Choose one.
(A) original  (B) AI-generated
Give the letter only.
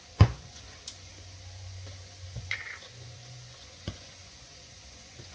B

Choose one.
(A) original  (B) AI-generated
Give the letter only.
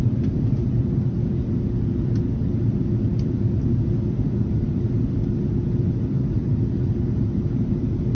B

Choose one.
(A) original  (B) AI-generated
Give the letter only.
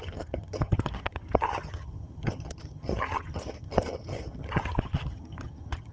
B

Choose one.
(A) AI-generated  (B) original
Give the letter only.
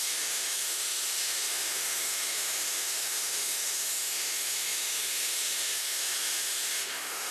A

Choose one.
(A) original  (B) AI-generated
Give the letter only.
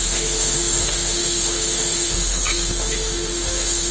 B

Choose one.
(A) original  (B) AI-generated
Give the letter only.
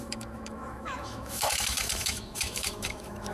B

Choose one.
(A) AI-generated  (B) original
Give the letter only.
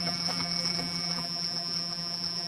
A